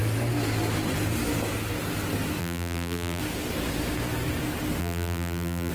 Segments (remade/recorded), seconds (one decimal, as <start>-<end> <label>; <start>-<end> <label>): 0.0-2.4 recorded; 2.4-3.2 remade; 3.2-4.8 recorded; 4.8-5.7 remade